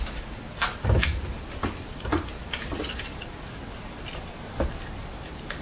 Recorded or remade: recorded